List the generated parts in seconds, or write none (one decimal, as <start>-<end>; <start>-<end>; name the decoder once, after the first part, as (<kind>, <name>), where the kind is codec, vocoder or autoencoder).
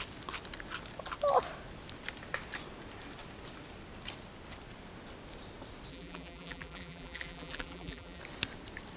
5.9-8.2 (vocoder, BigVGAN v2)